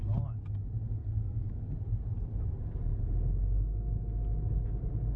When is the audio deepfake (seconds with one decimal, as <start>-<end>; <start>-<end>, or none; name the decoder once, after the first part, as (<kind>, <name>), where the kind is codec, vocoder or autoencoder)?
1.0-1.5 (codec, SNAC)